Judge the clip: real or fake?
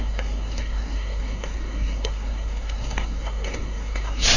fake